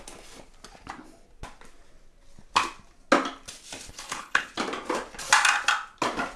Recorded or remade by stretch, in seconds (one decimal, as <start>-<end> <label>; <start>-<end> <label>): 0.0-3.9 recorded; 3.9-4.5 remade; 4.5-6.4 recorded